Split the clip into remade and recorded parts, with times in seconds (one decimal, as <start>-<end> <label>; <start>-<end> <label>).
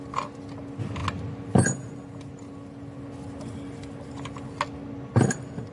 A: 0.0-5.7 recorded